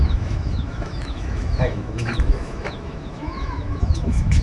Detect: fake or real fake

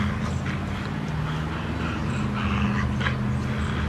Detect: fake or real real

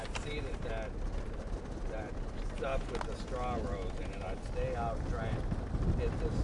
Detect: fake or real real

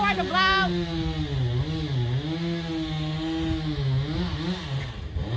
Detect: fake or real real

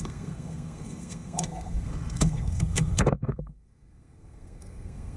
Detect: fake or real fake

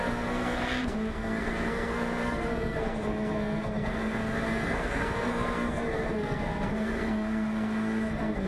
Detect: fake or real fake